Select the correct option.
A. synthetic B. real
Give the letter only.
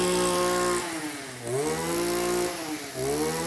B